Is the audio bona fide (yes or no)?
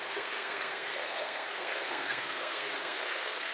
no